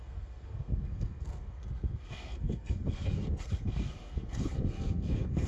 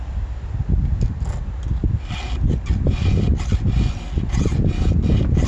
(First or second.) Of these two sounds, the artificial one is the first